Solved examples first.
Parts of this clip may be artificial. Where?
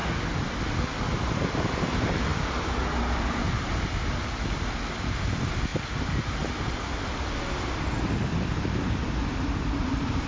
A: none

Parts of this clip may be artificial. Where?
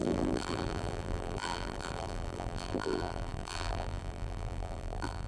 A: 0.0-5.3 (vocoder, BigVGAN v2)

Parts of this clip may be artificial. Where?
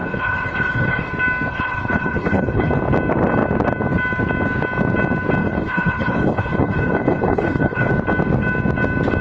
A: 0.0-1.1 (codec, HILCodec); 1.5-2.7; 5.4-7.9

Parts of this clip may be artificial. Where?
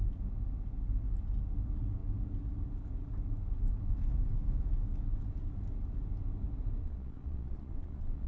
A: 6.8-8.3 (vocoder, Vocos)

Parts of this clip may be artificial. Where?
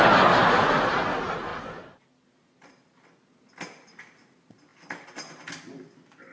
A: 0.4-0.9 (vocoder, BigVGAN v2); 1.5-2.7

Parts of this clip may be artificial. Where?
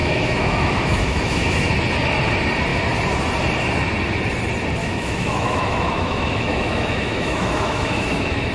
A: 0.0-1.7 (autoencoder, DAC-VAE); 4.8-8.5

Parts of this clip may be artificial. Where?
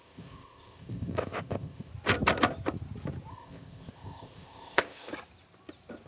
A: 0.0-1.9 (codec, ZipCodec); 3.3-5.1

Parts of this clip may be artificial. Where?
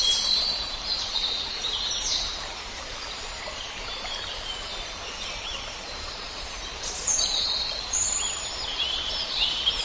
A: 0.0-9.8 (vocoder, BigVGAN v2)